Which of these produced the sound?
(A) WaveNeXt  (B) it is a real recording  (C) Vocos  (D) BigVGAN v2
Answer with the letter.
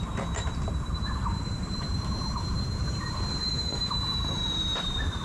D